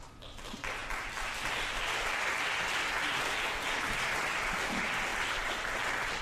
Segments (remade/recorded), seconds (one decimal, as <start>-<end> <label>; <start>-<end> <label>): 0.0-6.2 recorded